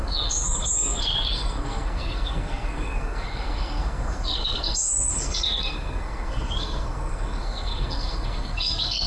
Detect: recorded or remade remade